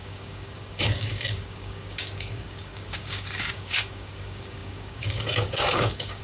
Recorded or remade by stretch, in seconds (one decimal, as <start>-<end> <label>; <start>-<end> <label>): 0.0-6.2 remade